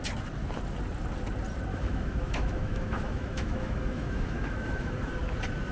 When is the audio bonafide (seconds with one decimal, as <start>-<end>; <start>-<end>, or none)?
0.0-1.7; 5.1-5.7